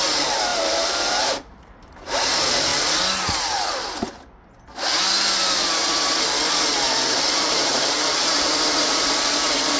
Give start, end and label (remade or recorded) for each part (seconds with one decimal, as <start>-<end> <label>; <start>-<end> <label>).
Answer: 0.0-2.7 remade; 2.7-7.2 recorded; 7.2-9.8 remade